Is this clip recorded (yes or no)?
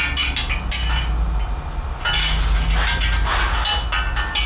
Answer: yes